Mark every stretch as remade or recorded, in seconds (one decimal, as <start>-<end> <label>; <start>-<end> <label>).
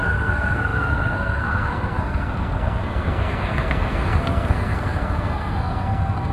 0.0-6.3 remade